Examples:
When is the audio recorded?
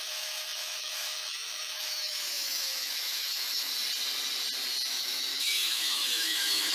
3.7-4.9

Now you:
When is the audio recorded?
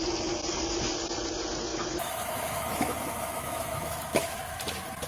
0.0-1.7; 4.6-5.1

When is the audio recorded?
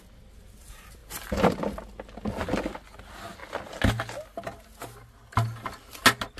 0.0-6.4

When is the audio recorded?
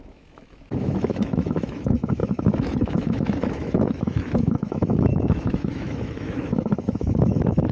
none